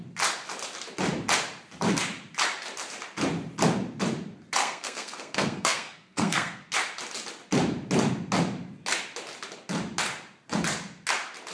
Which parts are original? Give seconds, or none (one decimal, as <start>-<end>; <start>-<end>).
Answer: 0.0-4.6; 6.6-11.5